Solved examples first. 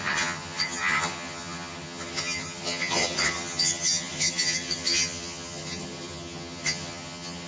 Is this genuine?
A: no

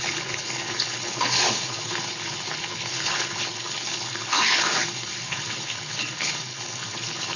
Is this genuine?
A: no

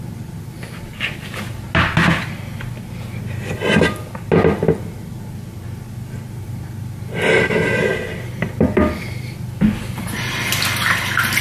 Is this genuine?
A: yes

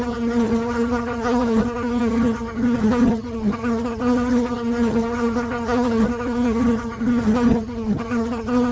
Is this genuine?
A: no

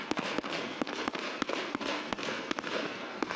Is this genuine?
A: no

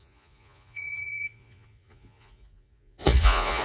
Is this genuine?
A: no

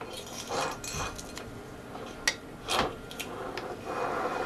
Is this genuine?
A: yes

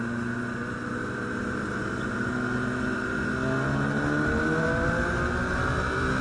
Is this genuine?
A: yes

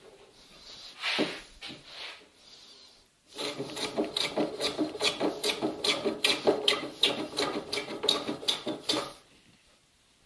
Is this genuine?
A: yes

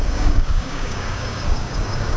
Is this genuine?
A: no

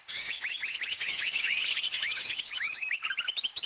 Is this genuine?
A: no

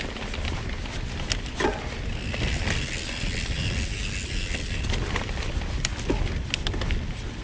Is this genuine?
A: yes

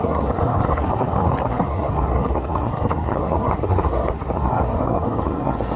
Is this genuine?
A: no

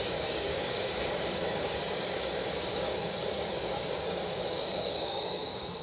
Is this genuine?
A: no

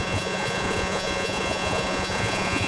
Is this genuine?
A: no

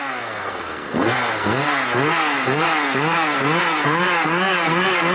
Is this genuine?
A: no